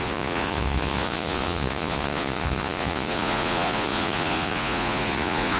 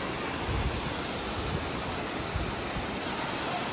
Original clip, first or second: second